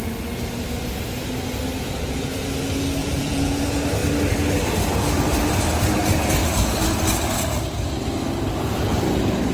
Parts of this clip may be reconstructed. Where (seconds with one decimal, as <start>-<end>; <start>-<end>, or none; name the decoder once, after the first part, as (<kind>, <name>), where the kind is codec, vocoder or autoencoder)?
3.0-3.6 (vocoder, Vocos)